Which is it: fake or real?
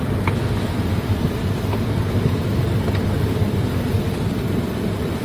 fake